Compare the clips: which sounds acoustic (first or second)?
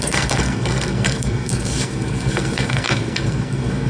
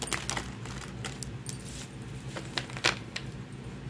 second